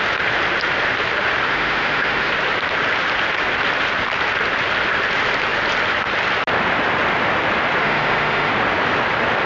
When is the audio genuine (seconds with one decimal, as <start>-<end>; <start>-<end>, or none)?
0.0-1.5; 2.3-7.8; 8.5-9.5